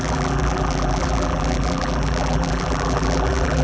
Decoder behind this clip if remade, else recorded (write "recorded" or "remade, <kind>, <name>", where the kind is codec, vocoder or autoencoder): remade, vocoder, BigVGAN v2